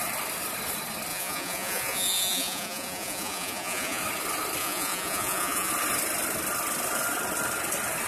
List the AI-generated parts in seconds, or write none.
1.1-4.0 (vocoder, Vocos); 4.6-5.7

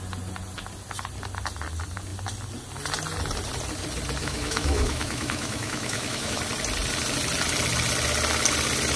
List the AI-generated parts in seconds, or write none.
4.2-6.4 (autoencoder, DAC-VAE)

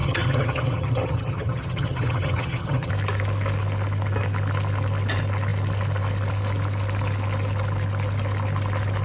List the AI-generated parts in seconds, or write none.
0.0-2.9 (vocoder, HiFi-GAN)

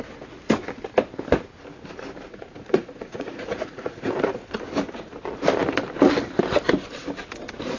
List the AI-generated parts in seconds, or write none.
2.3-4.5 (vocoder, Vocos)

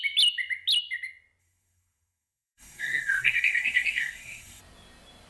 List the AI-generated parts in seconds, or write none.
1.4-4.6 (codec, SNAC)